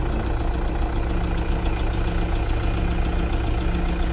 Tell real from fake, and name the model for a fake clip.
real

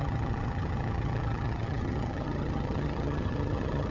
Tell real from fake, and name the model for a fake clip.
fake, vocoder, HiFi-GAN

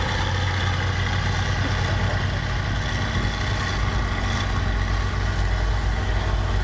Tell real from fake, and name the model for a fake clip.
real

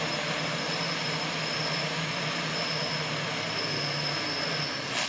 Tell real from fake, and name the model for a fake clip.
real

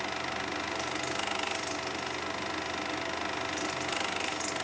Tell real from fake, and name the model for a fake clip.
real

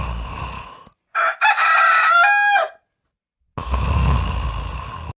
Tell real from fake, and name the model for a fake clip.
real